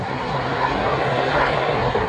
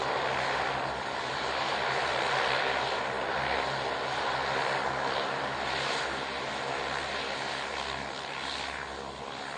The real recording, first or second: second